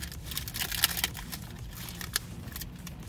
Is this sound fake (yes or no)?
no